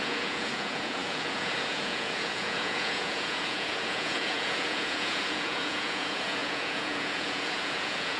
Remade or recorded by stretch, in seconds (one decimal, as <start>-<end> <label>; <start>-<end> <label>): 0.0-8.2 remade